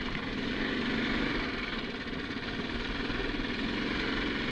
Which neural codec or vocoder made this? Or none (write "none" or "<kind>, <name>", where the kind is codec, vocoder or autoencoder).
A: none